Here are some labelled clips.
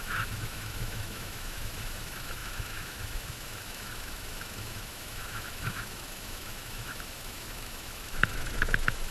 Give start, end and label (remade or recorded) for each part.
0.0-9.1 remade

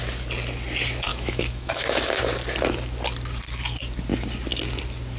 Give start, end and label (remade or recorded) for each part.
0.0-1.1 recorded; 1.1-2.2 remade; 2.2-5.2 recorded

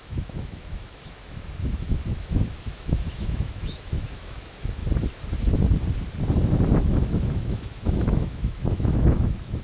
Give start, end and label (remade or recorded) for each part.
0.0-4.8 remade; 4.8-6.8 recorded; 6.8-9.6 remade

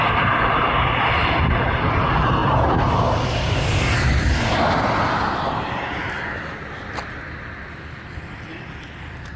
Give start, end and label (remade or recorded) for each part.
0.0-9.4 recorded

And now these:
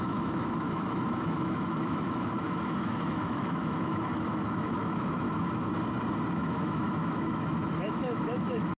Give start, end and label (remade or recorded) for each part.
0.0-5.7 remade; 5.7-6.3 recorded; 6.3-8.8 remade

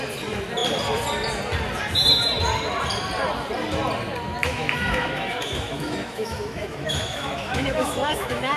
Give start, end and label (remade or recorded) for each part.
0.0-4.4 recorded; 4.4-8.6 remade

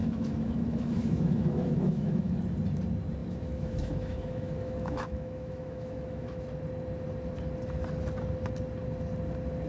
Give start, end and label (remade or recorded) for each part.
0.0-2.4 remade; 2.4-3.2 recorded; 3.2-6.4 remade; 6.4-9.7 recorded